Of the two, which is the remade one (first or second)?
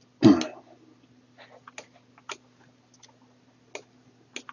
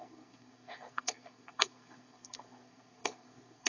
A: second